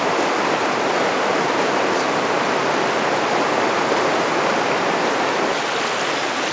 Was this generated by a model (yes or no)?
no